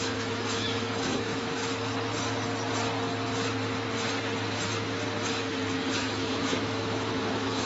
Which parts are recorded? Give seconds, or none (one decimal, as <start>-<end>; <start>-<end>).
1.6-6.0